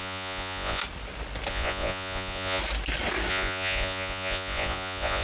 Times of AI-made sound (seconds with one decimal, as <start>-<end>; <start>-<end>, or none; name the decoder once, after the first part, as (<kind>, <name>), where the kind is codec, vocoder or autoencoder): 0.0-0.8 (vocoder, Vocos); 1.5-2.6; 3.3-5.2